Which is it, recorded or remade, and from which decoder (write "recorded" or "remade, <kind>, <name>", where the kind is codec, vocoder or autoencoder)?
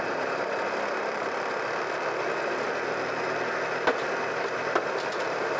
recorded